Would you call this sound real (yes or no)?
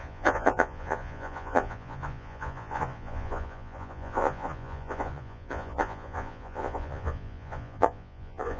no